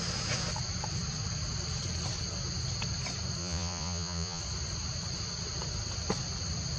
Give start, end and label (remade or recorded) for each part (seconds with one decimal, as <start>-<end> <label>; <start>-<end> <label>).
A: 0.0-3.4 recorded; 3.4-4.4 remade; 4.4-6.8 recorded